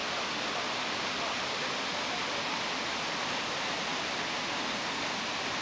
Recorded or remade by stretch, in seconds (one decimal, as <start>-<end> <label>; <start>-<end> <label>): 0.0-5.6 recorded